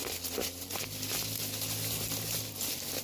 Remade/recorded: recorded